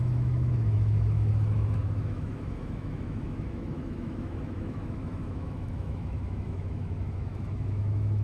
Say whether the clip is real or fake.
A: fake